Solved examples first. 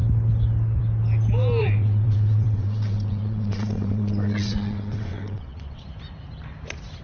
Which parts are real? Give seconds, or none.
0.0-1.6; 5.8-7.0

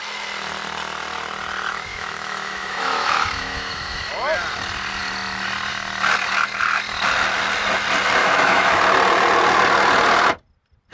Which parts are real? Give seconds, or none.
0.0-1.9; 4.1-8.2; 8.8-10.9

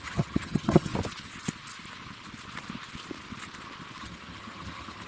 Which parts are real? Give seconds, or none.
0.9-4.0